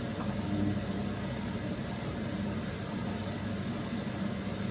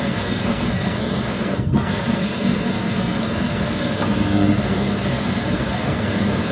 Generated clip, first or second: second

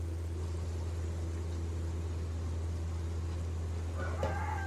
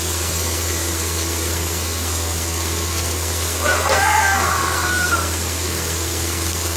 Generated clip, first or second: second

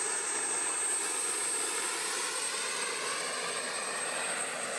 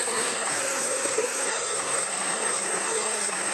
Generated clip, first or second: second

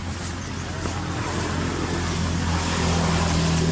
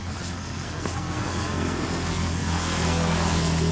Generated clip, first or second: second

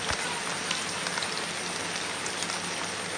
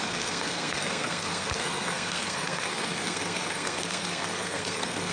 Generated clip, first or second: second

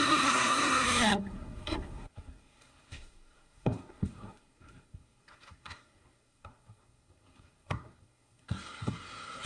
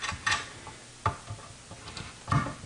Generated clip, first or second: first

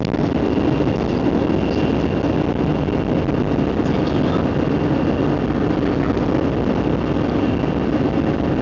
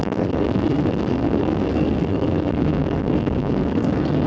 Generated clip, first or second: second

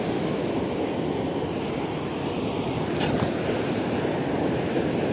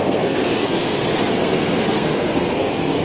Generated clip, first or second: second